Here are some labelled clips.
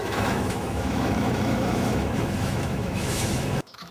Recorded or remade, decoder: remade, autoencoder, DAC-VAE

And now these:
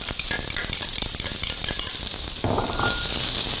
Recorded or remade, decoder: recorded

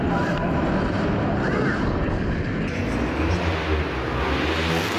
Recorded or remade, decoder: recorded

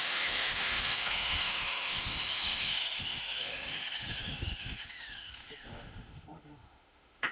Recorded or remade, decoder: remade, autoencoder, DAC-VAE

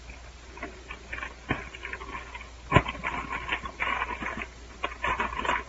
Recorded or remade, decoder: recorded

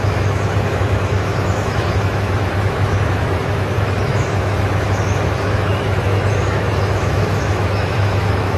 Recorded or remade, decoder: remade, autoencoder, DAC-VAE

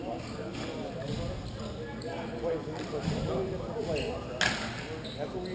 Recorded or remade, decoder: recorded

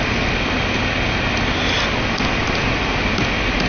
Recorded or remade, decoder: recorded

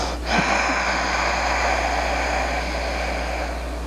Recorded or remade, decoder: recorded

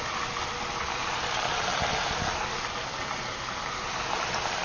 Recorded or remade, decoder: recorded